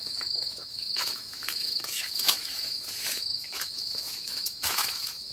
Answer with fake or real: fake